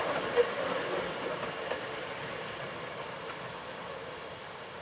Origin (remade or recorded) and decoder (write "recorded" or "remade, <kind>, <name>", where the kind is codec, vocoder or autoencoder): remade, vocoder, BigVGAN v2